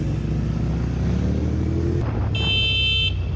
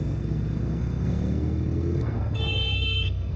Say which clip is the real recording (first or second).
first